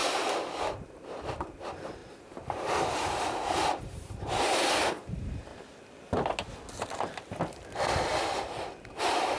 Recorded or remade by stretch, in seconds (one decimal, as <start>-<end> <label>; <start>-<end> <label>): 0.0-5.5 remade; 5.5-9.0 recorded; 9.0-9.4 remade